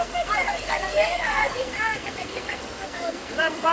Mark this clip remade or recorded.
remade